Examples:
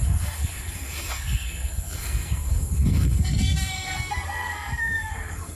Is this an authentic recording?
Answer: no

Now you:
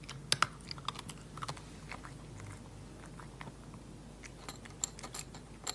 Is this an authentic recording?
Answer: yes